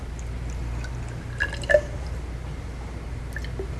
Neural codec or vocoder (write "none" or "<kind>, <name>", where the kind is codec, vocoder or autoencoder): none